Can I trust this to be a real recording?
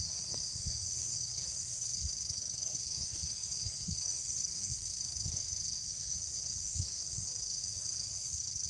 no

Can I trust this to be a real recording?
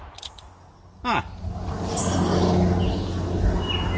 yes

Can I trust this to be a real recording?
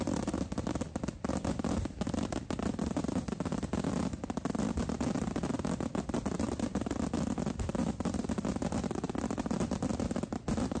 yes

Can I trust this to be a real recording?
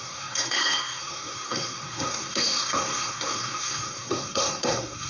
no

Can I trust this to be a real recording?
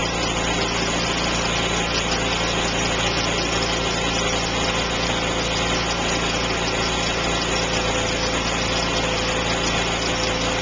yes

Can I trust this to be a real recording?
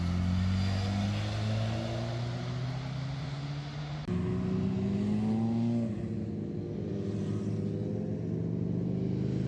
yes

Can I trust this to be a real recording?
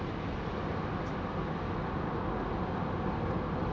yes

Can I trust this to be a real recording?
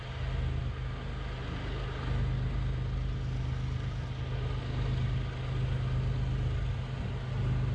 yes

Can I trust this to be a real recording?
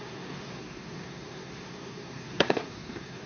no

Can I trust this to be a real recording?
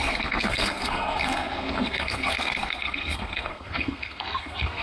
no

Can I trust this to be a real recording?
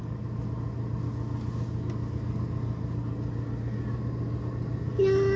yes